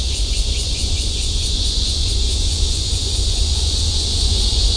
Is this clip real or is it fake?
fake